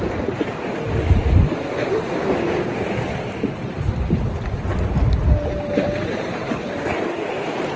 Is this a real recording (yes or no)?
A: yes